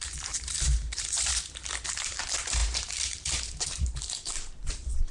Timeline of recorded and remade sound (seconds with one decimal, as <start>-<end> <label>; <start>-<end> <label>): 0.0-1.3 remade; 1.3-2.0 recorded; 2.0-5.1 remade